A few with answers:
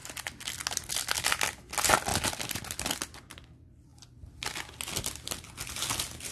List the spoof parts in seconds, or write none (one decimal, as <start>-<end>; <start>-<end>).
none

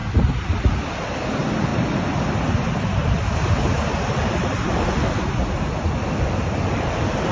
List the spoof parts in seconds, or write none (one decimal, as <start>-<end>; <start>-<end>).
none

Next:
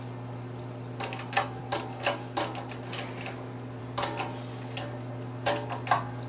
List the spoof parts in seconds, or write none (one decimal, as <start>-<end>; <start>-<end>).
none